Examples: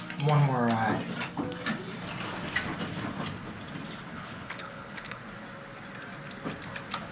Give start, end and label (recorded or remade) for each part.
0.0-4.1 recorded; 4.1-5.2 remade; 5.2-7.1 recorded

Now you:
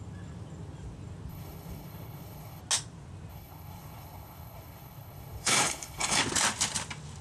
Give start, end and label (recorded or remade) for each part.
0.0-1.3 recorded; 1.3-2.6 remade; 2.6-3.3 recorded; 3.3-6.2 remade; 6.2-7.2 recorded

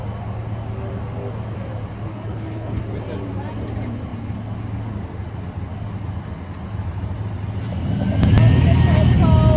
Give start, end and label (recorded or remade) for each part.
0.0-2.1 recorded; 2.1-2.8 remade; 2.8-9.6 recorded

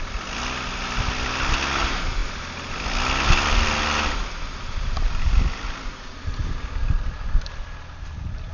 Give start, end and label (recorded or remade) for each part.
0.0-8.5 recorded

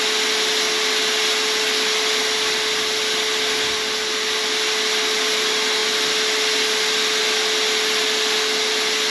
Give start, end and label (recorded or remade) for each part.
0.0-9.1 recorded

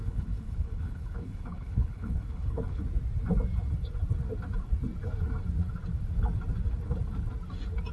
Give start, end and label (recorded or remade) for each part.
0.0-2.8 remade; 2.8-7.9 recorded